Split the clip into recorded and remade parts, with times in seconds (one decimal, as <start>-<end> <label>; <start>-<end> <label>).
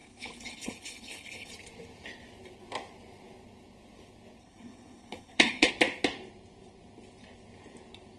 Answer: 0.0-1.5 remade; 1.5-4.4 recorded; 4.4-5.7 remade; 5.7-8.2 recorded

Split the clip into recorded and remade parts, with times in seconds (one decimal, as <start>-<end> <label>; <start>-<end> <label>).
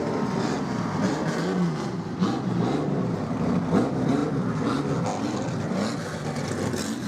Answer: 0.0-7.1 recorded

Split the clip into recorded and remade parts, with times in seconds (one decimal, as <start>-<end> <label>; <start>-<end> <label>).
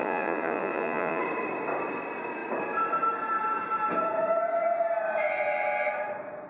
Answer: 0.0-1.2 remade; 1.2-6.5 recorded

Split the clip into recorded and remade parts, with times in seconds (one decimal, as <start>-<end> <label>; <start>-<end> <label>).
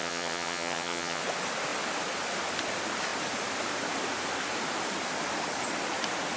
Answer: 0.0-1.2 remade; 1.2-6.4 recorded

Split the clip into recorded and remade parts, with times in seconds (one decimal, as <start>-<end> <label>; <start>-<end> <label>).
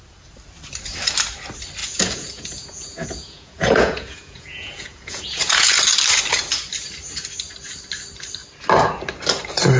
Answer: 0.0-1.8 recorded; 1.8-5.7 remade; 5.7-9.8 recorded